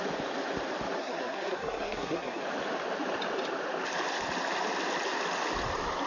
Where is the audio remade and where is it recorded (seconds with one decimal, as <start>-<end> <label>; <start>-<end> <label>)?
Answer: 0.0-1.0 recorded; 1.0-2.4 remade; 2.4-6.1 recorded

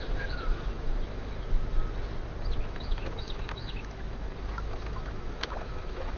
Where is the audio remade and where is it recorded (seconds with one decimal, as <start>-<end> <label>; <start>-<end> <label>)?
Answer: 0.0-1.8 remade; 1.8-2.5 recorded; 2.5-6.2 remade

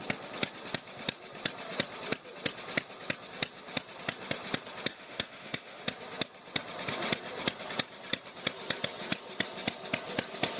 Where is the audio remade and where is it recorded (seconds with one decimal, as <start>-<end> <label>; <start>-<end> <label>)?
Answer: 0.0-4.9 recorded; 4.9-5.8 remade; 5.8-10.6 recorded

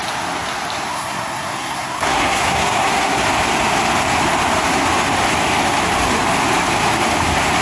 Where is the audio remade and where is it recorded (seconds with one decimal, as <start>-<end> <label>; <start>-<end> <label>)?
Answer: 0.0-0.9 recorded; 0.9-3.2 remade; 3.2-7.6 recorded

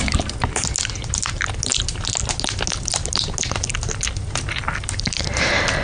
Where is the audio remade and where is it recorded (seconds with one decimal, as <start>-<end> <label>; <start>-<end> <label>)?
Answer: 0.0-5.8 recorded

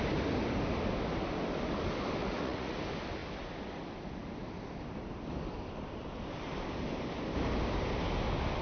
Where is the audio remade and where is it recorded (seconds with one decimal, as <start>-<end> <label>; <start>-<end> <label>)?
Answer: 0.0-2.2 recorded; 2.2-2.8 remade; 2.8-8.6 recorded

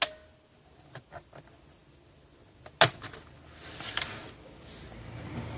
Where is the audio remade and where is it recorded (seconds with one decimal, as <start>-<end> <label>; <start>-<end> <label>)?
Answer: 0.0-5.6 recorded

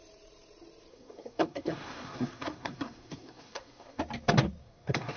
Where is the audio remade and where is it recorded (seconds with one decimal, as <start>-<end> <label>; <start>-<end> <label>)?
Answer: 0.0-0.9 recorded; 0.9-4.0 remade; 4.0-4.6 recorded; 4.6-5.2 remade